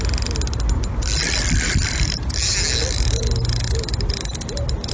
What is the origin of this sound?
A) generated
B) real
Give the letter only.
B